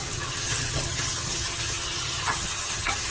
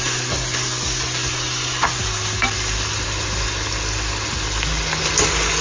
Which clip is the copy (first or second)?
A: first